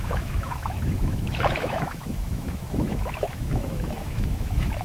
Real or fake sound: fake